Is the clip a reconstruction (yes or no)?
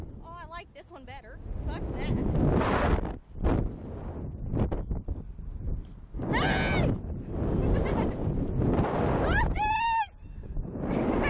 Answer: no